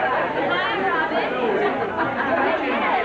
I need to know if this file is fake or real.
real